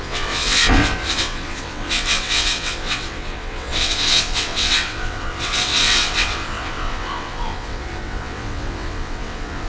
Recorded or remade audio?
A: remade